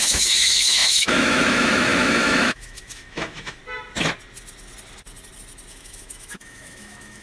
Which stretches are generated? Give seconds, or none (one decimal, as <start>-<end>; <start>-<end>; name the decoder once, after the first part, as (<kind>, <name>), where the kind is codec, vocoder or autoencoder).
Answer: 0.0-3.6 (autoencoder, DAC-VAE); 5.7-7.2